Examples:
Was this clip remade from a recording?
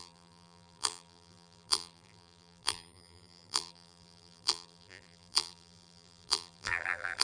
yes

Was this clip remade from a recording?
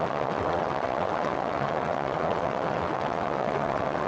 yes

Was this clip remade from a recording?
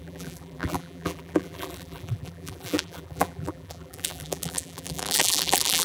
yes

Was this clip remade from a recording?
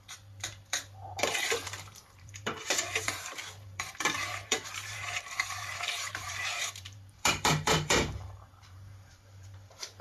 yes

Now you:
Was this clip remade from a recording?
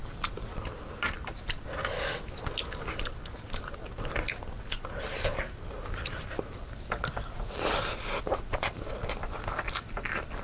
no